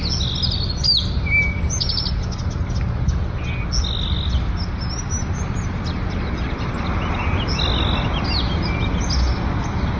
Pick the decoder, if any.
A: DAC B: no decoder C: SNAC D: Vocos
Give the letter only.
B